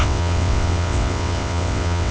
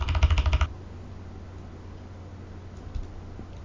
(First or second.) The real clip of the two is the second